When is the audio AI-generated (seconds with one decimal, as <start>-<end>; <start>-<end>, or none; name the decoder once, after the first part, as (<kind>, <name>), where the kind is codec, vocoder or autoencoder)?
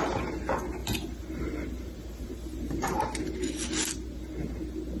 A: 0.8-3.0 (vocoder, BigVGAN v2)